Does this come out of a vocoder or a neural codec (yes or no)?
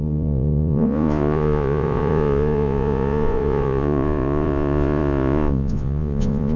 yes